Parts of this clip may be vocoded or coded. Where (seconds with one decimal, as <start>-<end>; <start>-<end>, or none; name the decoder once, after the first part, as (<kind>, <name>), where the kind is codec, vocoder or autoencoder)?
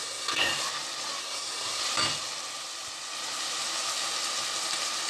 0.0-0.5 (codec, SNAC); 1.2-1.8